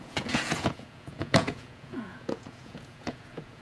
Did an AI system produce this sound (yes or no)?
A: yes